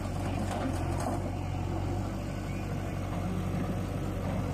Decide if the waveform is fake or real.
real